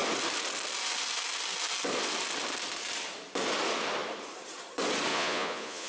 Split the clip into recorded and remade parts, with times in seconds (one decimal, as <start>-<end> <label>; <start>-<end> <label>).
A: 0.0-5.1 recorded; 5.1-5.9 remade

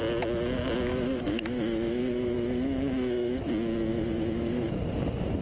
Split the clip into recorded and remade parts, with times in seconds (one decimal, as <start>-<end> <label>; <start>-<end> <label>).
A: 0.0-0.9 recorded; 0.9-3.5 remade; 3.5-3.9 recorded; 3.9-4.8 remade; 4.8-5.4 recorded

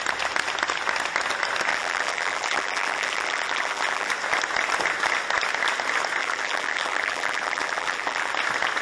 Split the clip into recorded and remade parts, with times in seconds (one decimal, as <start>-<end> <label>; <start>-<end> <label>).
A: 0.0-1.7 recorded; 1.7-4.1 remade; 4.1-6.2 recorded; 6.2-8.3 remade; 8.3-8.8 recorded

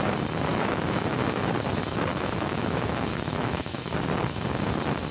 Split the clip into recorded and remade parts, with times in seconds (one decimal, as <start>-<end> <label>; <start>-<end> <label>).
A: 0.0-0.5 recorded; 0.5-1.5 remade; 1.5-2.1 recorded; 2.1-3.9 remade; 3.9-5.1 recorded